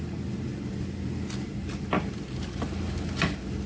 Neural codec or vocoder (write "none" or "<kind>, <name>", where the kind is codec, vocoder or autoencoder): none